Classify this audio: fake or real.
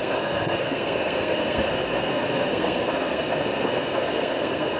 fake